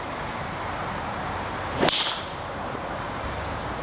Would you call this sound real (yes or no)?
no